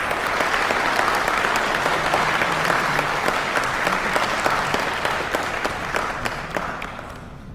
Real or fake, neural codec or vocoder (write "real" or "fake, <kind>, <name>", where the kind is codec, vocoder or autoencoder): real